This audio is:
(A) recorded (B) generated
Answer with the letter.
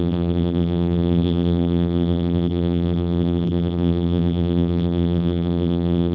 B